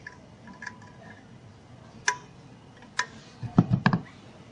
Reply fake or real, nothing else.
real